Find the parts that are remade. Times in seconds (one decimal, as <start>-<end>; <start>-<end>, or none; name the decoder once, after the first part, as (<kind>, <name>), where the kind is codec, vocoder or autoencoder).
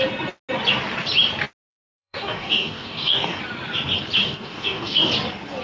1.7-3.4 (codec, DAC); 4.2-5.1